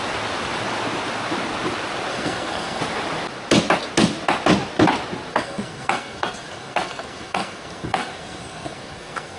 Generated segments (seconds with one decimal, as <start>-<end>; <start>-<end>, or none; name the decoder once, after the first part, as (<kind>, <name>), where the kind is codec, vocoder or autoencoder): 2.1-2.8 (codec, SNAC); 5.3-9.4